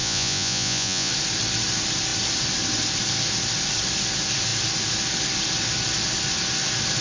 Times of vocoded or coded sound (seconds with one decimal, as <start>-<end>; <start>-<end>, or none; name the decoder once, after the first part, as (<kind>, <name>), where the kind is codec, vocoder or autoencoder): 0.0-1.1 (vocoder, Vocos)